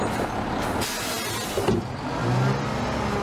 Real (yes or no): yes